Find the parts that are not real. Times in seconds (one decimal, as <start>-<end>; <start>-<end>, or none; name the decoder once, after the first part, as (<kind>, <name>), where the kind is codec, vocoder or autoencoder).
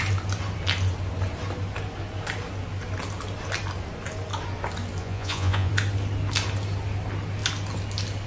5.0-5.7 (vocoder, Vocos)